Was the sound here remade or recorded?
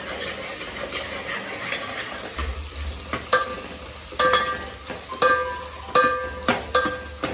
recorded